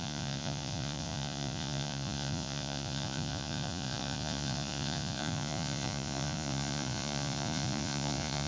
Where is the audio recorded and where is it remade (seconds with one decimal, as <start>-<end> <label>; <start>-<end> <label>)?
0.0-8.5 remade